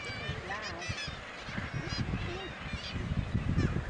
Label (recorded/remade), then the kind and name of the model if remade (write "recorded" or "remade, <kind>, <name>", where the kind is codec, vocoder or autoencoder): recorded